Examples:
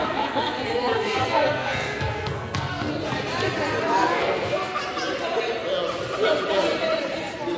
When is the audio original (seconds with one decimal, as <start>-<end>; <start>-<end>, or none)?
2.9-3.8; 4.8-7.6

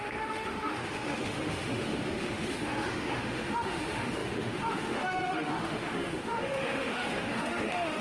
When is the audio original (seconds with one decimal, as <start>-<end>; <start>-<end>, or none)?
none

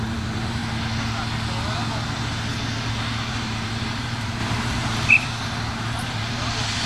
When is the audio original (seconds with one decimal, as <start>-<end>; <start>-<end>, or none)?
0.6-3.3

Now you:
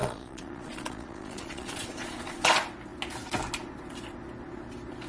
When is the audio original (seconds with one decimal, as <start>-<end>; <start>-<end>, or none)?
2.5-5.1

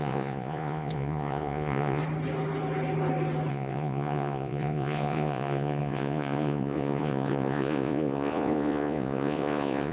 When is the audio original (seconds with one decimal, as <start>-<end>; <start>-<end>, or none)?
2.0-3.5

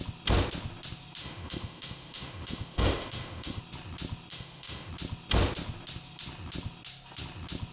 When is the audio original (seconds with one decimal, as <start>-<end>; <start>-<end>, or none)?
0.0-1.2; 3.6-4.3; 4.9-7.7

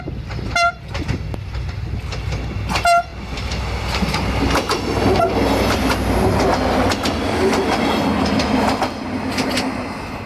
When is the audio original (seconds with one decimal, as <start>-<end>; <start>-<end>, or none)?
0.0-10.3